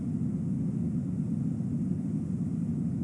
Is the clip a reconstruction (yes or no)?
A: no